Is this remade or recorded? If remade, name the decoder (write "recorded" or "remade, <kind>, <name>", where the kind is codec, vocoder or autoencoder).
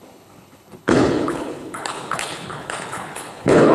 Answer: remade, codec, HILCodec